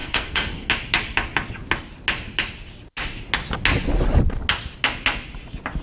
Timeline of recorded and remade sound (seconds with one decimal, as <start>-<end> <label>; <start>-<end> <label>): 0.0-0.7 remade; 0.7-5.8 recorded